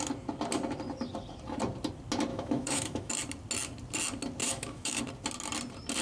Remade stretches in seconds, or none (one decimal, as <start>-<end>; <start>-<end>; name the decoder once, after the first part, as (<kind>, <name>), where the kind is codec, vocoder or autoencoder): 2.3-3.1 (autoencoder, DAC-VAE); 4.4-5.0